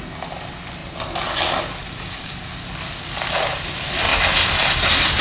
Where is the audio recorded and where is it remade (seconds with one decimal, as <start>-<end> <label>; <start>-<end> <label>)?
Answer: 0.0-5.2 recorded